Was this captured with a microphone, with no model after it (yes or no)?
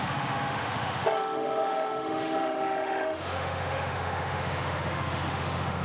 no